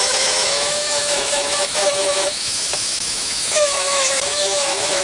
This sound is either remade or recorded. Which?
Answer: remade